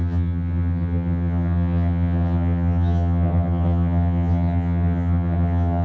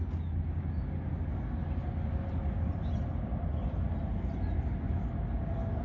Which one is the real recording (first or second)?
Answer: second